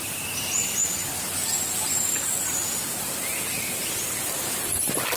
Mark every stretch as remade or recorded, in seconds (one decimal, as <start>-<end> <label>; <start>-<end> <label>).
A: 0.0-5.2 recorded